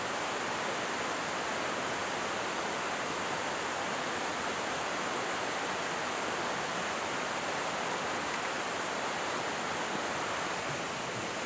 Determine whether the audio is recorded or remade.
recorded